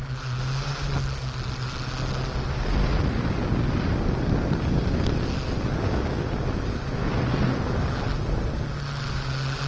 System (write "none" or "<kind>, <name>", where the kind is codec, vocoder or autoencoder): none